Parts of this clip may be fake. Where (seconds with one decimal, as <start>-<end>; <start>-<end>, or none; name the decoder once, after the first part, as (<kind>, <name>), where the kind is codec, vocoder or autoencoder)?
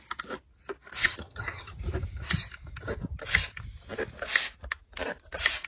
1.0-1.8 (vocoder, HiFi-GAN)